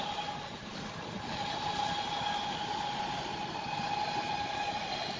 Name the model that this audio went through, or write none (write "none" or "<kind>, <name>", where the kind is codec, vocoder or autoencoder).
vocoder, BigVGAN v2